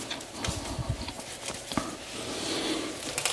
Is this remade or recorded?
recorded